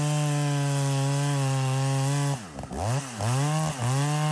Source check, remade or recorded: recorded